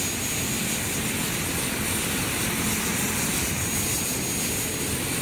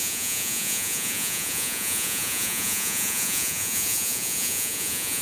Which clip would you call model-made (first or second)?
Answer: second